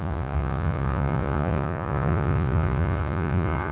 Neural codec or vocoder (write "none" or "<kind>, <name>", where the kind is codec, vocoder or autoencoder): vocoder, Vocos